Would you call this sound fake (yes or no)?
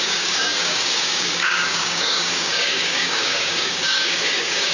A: yes